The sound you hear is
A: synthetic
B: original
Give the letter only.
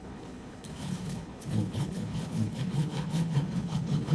A